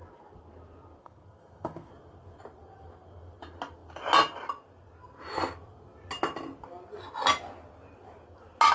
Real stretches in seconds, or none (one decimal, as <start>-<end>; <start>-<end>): 0.0-1.0; 1.9-8.7